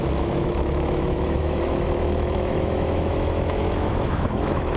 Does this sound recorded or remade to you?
remade